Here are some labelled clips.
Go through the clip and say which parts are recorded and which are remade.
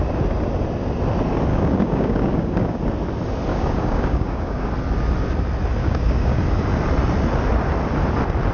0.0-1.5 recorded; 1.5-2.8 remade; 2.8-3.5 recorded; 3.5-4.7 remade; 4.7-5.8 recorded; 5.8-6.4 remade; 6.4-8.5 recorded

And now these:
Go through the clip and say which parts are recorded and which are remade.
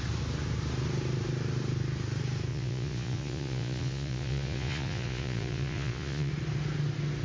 0.0-2.5 recorded; 2.5-6.3 remade; 6.3-7.2 recorded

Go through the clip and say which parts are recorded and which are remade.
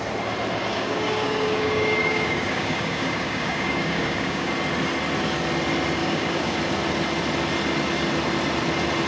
0.0-0.7 recorded; 0.7-4.5 remade; 4.5-6.0 recorded; 6.0-6.6 remade; 6.6-9.1 recorded